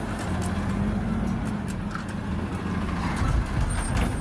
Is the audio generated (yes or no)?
no